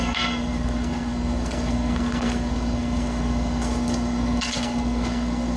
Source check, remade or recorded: remade